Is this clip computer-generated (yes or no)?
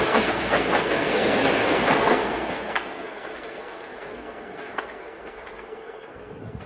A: yes